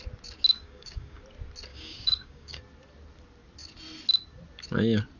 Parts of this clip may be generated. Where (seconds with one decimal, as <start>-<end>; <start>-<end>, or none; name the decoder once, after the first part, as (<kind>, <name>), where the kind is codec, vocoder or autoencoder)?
0.6-1.2 (codec, DAC); 1.7-2.6